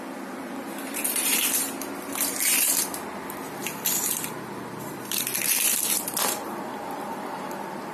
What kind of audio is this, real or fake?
fake